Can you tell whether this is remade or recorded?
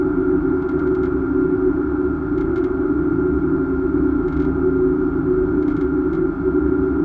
recorded